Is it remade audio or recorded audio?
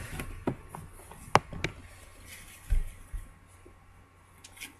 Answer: recorded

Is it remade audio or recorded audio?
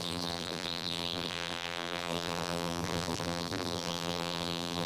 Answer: remade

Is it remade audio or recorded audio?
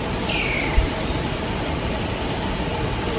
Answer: recorded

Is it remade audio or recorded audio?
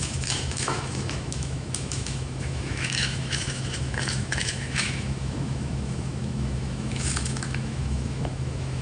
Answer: remade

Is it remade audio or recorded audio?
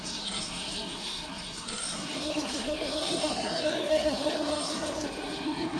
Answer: remade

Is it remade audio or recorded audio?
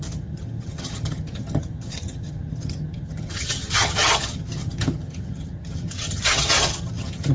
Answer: remade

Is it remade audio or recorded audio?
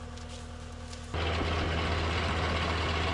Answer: recorded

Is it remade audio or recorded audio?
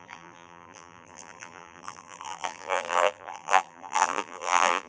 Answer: remade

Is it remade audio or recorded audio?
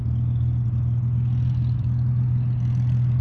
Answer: recorded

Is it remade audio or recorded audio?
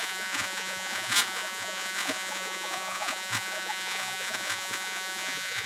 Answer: remade